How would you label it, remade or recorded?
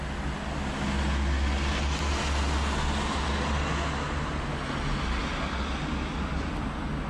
recorded